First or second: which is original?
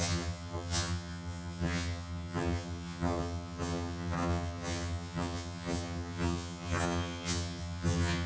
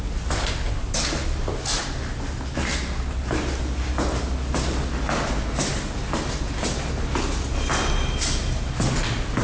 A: second